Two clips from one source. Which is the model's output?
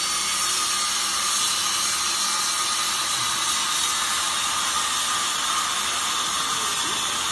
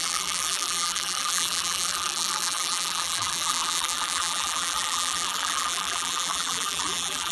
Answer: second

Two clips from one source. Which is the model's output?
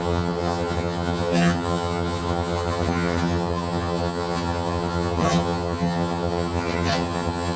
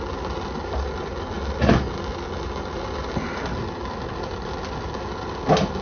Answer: first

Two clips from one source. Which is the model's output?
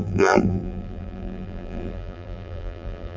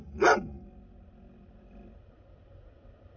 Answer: first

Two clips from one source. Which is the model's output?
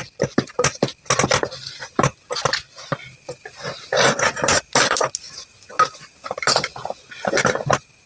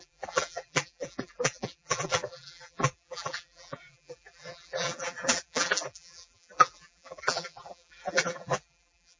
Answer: second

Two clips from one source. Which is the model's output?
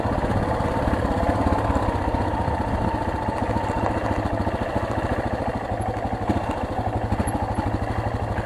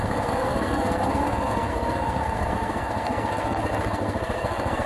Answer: second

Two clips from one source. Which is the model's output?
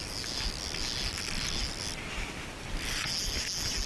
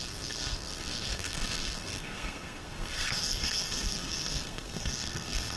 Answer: second